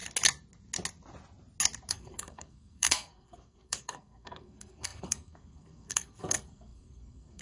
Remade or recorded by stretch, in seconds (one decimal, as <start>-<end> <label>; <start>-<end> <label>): 0.0-1.9 recorded; 1.9-7.4 remade